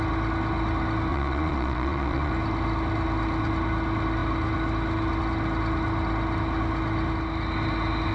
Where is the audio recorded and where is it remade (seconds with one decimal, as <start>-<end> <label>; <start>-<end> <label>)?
0.0-1.1 recorded; 1.1-2.3 remade; 2.3-8.1 recorded